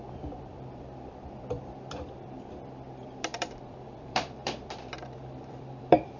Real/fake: fake